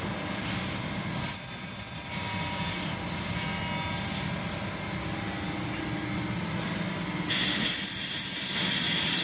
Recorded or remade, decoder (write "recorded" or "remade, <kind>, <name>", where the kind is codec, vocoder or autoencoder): recorded